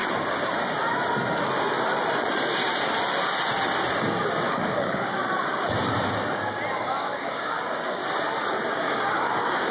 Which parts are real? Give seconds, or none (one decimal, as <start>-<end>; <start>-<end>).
0.0-4.5; 5.2-6.8; 8.0-8.7